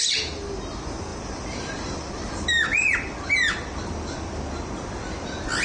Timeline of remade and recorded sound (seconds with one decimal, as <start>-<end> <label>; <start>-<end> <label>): 0.0-1.1 recorded; 1.1-4.5 remade; 4.5-5.6 recorded